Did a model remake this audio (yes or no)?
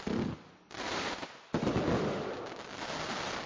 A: no